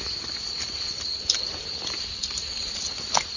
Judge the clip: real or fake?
real